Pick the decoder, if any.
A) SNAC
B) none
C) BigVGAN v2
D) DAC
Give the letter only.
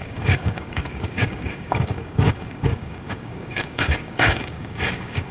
D